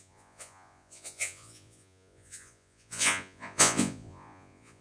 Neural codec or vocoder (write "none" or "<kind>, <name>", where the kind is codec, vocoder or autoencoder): vocoder, Vocos